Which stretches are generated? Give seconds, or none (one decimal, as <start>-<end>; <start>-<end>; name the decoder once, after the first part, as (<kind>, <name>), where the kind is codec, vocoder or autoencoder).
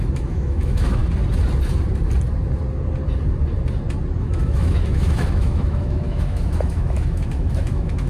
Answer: 0.0-1.0 (autoencoder, DAC-VAE); 4.2-8.1